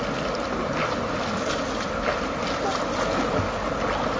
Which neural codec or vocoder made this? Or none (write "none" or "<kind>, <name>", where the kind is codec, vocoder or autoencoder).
none